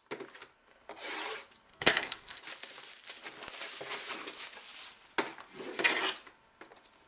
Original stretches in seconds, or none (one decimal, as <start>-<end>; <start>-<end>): 0.0-1.7; 2.4-7.1